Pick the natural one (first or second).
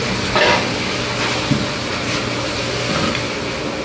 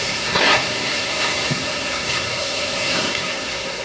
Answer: first